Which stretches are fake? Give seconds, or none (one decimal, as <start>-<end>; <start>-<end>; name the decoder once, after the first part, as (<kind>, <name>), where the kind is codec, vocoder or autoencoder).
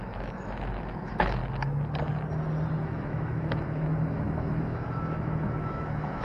0.0-1.4 (autoencoder, DAC-VAE); 2.8-6.2